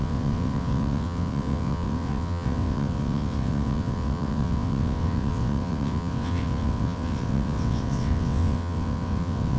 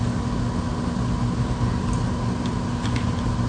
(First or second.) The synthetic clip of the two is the first